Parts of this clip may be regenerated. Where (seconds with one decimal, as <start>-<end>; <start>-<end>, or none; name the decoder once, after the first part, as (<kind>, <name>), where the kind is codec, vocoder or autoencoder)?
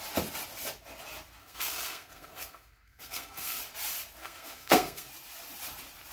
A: 1.4-3.6 (codec, SNAC); 4.2-5.1